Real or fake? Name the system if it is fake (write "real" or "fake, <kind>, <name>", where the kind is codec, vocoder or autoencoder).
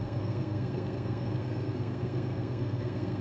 fake, codec, SNAC